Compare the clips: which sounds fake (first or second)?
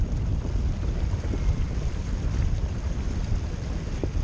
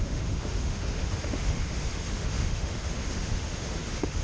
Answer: second